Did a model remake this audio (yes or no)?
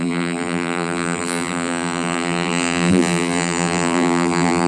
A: yes